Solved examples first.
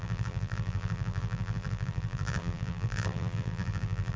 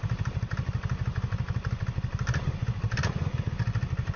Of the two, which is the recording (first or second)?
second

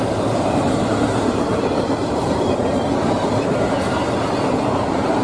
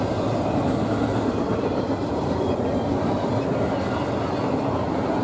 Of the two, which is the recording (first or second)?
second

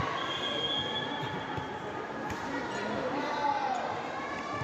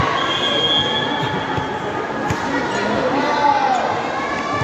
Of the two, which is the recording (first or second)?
second